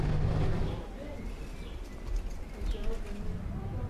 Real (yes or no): yes